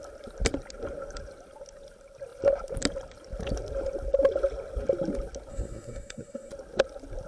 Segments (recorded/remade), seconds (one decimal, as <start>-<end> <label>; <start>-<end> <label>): 0.0-5.5 recorded; 5.5-6.5 remade; 6.5-7.3 recorded